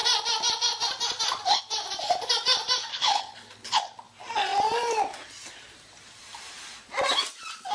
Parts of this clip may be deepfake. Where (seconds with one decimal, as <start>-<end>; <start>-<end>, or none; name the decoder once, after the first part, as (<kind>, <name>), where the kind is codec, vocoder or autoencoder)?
2.9-3.9 (codec, HILCodec)